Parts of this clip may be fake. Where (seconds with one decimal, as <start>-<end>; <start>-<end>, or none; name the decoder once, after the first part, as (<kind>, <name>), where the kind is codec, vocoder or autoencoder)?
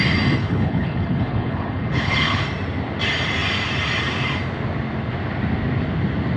0.4-2.4 (codec, HILCodec)